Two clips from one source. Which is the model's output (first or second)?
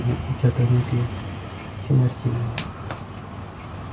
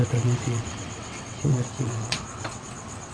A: second